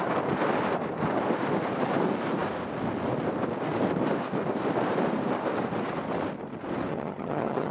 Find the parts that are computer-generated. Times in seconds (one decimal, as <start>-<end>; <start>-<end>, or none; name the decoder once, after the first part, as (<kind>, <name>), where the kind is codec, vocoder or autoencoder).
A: 6.9-7.7 (vocoder, HiFi-GAN)